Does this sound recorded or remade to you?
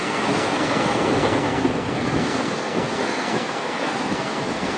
remade